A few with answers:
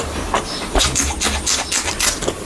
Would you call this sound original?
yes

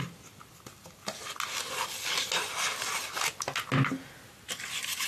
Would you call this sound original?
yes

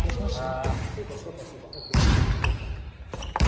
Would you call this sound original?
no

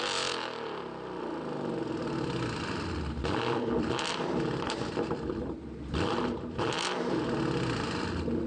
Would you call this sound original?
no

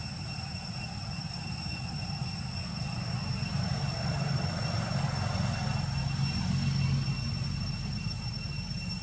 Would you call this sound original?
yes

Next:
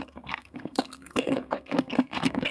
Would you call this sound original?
no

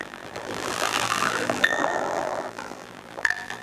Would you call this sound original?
no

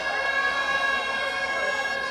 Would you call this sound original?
yes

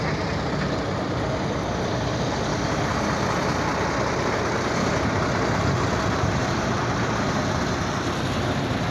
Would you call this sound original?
yes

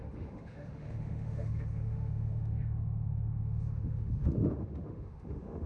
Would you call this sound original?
no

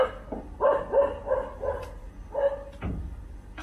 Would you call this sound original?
yes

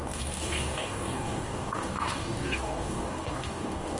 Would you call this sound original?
no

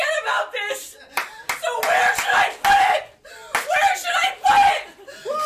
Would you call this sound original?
yes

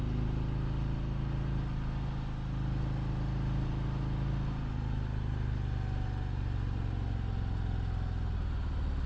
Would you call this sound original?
yes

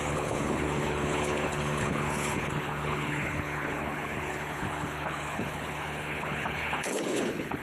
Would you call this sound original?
no